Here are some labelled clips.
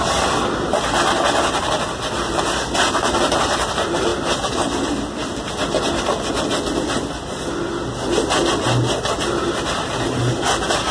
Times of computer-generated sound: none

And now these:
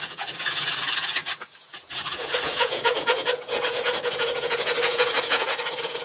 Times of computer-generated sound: 0.0-6.0

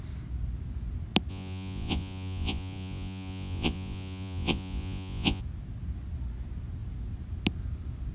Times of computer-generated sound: 1.3-5.4

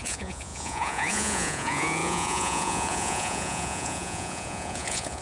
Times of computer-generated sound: 0.0-5.2

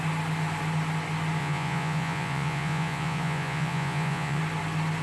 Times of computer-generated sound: 1.4-4.4

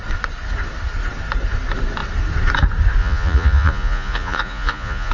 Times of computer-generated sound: 3.0-5.1

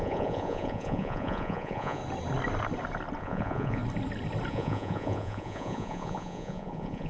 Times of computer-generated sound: 0.0-2.0; 3.2-3.8; 4.5-7.1

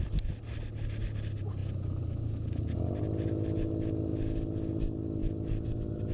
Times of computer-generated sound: none